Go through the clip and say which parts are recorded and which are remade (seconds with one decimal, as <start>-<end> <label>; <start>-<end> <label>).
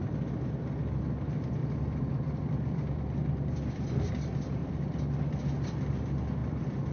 0.0-1.6 recorded; 1.6-4.1 remade; 4.1-4.6 recorded; 4.6-5.5 remade; 5.5-6.4 recorded; 6.4-6.9 remade